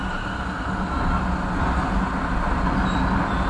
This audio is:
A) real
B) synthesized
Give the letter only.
A